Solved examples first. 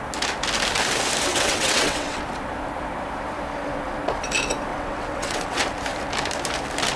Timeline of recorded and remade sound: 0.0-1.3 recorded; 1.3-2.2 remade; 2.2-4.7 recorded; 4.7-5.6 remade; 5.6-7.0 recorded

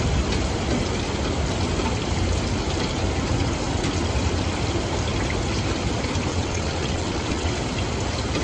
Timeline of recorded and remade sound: 0.0-6.3 recorded; 6.3-7.5 remade; 7.5-8.4 recorded